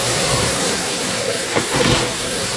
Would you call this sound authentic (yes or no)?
no